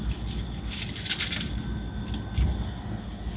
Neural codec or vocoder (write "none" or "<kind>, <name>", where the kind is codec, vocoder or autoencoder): none